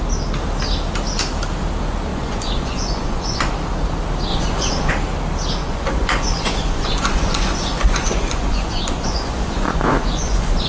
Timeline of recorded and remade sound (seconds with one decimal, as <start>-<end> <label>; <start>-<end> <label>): 0.0-2.1 recorded; 2.1-3.5 remade; 3.5-4.3 recorded; 4.3-4.9 remade; 4.9-5.6 recorded; 5.6-10.7 remade

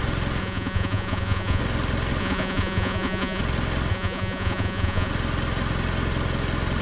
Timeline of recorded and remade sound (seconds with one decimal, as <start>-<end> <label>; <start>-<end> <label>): 0.0-0.4 recorded; 0.4-1.6 remade; 1.6-2.2 recorded; 2.2-3.4 remade; 3.4-3.9 recorded; 3.9-5.1 remade; 5.1-6.8 recorded

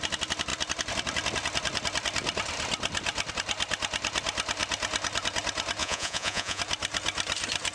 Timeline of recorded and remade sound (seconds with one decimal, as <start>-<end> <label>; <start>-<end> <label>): 0.0-5.8 recorded; 5.8-6.6 remade; 6.6-7.7 recorded

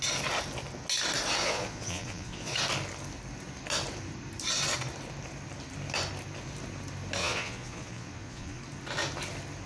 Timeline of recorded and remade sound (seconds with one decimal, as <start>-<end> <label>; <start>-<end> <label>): 0.0-1.4 recorded; 1.4-2.6 remade; 2.6-7.2 recorded; 7.2-8.6 remade; 8.6-9.7 recorded

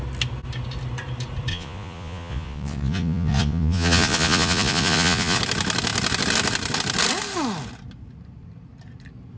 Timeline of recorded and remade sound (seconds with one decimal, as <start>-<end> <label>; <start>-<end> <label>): 0.0-1.5 recorded; 1.5-5.4 remade; 5.4-9.4 recorded

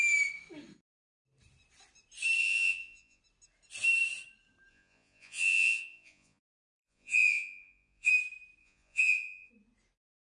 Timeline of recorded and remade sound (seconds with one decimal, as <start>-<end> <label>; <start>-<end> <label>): 0.0-2.4 recorded; 2.4-3.2 remade; 3.2-4.7 recorded; 4.7-8.1 remade; 8.1-8.6 recorded; 8.6-9.5 remade; 9.5-10.2 recorded